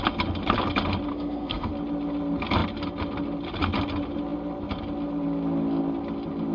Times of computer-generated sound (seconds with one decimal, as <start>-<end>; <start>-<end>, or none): 1.1-1.7